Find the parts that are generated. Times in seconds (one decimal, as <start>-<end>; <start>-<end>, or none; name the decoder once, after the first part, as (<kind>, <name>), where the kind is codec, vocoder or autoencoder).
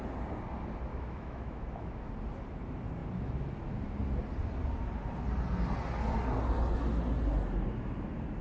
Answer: 0.9-2.1 (autoencoder, DAC-VAE)